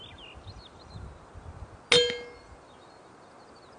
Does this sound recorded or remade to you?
recorded